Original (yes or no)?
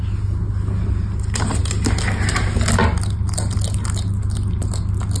yes